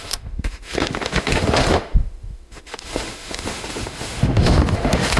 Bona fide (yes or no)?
no